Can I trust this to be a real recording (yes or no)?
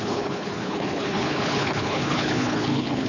no